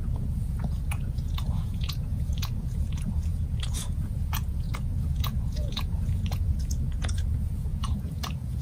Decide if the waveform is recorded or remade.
remade